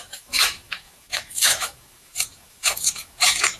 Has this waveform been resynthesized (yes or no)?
yes